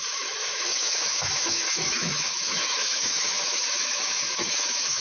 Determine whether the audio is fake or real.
fake